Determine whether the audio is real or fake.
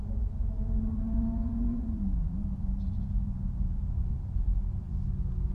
fake